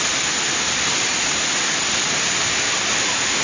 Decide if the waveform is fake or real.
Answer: real